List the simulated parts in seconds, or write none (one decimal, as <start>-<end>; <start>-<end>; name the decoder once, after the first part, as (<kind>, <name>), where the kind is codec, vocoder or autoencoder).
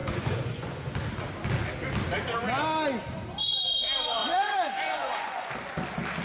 0.0-0.9 (vocoder, Vocos); 4.2-5.5